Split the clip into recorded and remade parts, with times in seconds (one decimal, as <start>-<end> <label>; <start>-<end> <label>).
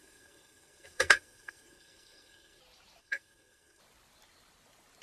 0.0-2.6 remade; 2.6-3.0 recorded; 3.0-3.8 remade; 3.8-5.0 recorded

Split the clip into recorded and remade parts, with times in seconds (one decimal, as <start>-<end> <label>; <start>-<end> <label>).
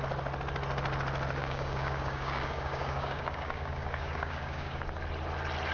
0.0-1.4 recorded; 1.4-4.8 remade; 4.8-5.7 recorded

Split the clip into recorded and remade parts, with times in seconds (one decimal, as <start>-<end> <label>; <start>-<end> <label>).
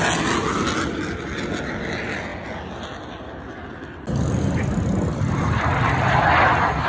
0.0-0.5 recorded; 0.5-1.0 remade; 1.0-6.9 recorded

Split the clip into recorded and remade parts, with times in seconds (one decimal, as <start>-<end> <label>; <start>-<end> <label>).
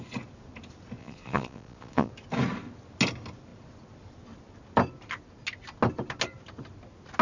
0.0-1.0 recorded; 1.0-2.1 remade; 2.1-7.2 recorded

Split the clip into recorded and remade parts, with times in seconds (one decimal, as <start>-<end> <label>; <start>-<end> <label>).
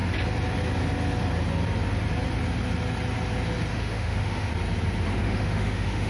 0.0-3.7 recorded; 3.7-4.5 remade; 4.5-5.1 recorded; 5.1-6.1 remade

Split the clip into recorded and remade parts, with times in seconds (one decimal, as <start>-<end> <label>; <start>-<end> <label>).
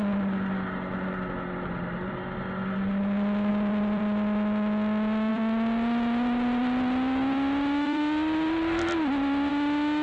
0.0-3.5 recorded; 3.5-4.0 remade; 4.0-5.3 recorded; 5.3-9.5 remade; 9.5-10.0 recorded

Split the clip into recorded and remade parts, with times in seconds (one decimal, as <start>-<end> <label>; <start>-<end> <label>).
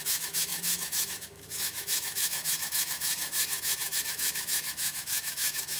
0.0-5.8 remade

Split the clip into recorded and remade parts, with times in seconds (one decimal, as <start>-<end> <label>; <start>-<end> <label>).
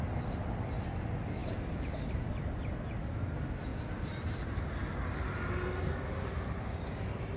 0.0-1.4 recorded; 1.4-2.1 remade; 2.1-7.4 recorded